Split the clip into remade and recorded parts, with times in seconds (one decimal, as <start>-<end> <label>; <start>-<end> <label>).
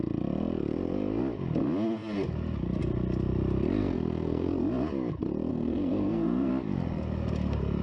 0.0-3.8 recorded; 3.8-4.5 remade; 4.5-5.5 recorded; 5.5-6.5 remade; 6.5-7.8 recorded